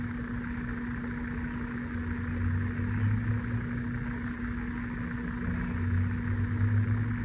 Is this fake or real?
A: real